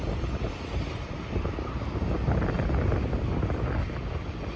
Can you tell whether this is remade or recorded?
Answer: recorded